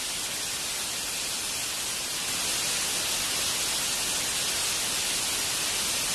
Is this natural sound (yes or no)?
yes